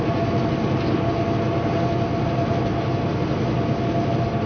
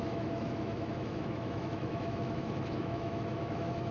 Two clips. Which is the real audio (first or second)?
first